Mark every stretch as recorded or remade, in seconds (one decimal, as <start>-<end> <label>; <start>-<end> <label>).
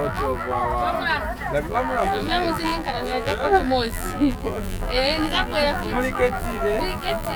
0.0-0.6 remade; 0.6-1.7 recorded; 1.7-7.4 remade